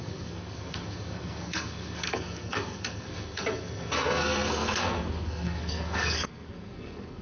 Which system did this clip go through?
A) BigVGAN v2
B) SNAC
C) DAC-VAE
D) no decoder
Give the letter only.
B